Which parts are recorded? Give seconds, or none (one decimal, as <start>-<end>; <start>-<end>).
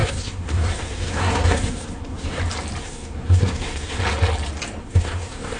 2.4-2.8; 4.0-4.8